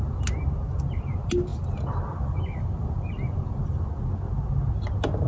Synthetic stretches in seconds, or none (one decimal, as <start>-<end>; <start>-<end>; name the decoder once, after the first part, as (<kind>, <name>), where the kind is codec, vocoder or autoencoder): none